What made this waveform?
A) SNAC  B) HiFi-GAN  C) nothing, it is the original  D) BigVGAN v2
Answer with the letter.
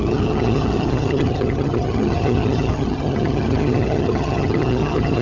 B